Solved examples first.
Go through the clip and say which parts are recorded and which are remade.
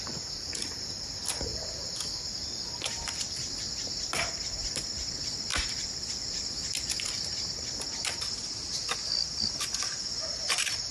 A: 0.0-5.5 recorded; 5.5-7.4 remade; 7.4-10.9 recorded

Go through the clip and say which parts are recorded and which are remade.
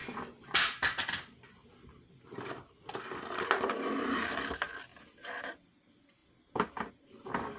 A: 0.0-7.6 recorded